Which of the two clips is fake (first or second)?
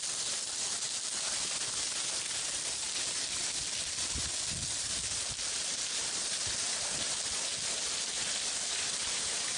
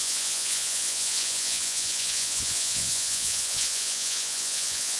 second